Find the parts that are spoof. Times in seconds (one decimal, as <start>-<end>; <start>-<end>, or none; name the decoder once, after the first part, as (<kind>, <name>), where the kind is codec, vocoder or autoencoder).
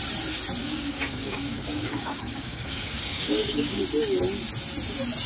0.6-3.8 (codec, DAC)